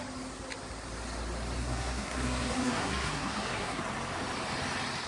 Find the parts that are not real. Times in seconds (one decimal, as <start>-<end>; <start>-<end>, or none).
1.6-3.8